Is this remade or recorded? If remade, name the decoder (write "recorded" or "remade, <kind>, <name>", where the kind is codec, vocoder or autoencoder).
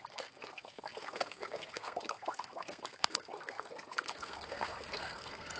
remade, codec, SNAC